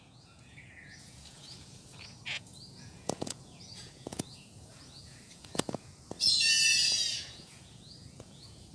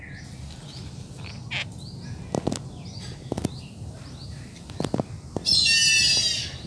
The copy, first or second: first